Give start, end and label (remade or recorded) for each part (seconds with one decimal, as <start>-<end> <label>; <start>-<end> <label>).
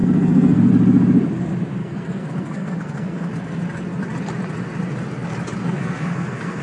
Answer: 0.0-0.7 remade; 0.7-1.8 recorded; 1.8-3.3 remade; 3.3-5.6 recorded; 5.6-6.6 remade